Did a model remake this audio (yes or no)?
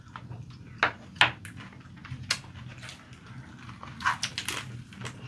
no